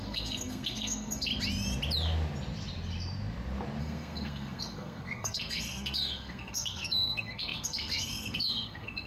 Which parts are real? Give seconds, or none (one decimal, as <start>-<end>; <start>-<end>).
1.3-3.8